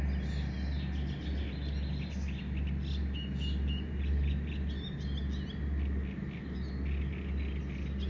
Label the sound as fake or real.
real